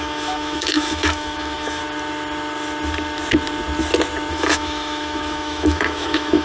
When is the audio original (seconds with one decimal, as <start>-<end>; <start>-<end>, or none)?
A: 1.8-4.3